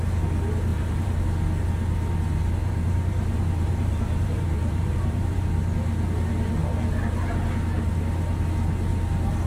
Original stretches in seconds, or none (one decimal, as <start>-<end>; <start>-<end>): 0.0-0.7; 1.2-2.6; 5.5-9.5